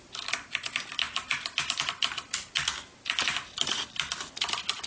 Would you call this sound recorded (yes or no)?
yes